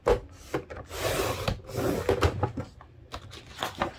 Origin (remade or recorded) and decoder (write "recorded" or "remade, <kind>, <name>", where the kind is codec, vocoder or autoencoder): recorded